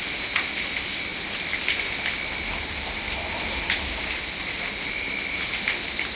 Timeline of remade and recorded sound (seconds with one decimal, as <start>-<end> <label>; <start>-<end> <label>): 0.0-6.1 recorded